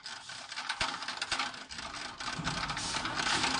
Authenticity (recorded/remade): recorded